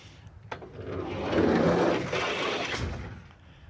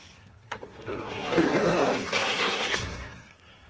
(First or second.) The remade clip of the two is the second